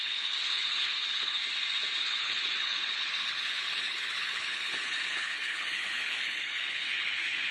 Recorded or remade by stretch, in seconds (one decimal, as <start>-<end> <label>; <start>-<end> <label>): 0.0-1.4 remade; 1.4-2.0 recorded; 2.0-7.5 remade